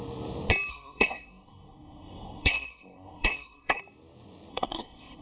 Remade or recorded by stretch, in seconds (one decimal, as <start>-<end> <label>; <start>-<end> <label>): 0.0-0.7 recorded; 0.7-3.8 remade; 3.8-4.5 recorded; 4.5-5.2 remade